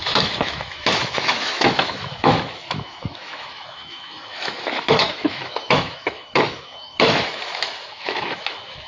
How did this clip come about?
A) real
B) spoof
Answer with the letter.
B